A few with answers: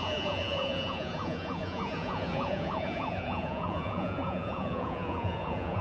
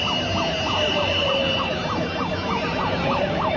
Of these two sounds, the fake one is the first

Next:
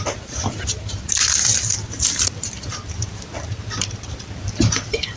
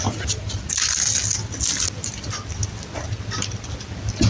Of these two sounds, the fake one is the first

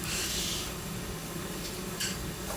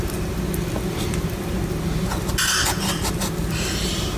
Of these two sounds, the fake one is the first